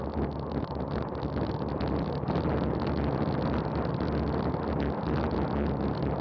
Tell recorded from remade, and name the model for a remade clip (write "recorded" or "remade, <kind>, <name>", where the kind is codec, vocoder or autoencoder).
recorded